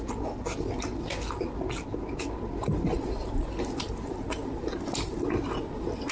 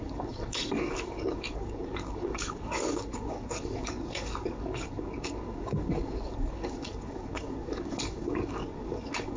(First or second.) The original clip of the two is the first